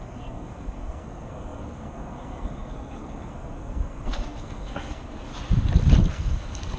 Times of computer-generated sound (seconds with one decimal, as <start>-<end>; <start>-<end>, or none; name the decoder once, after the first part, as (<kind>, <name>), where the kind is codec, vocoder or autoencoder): 0.0-5.3 (codec, SNAC); 6.1-6.8